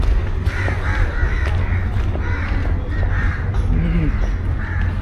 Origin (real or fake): real